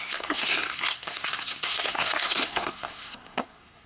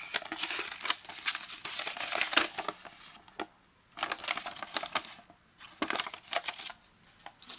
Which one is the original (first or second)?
second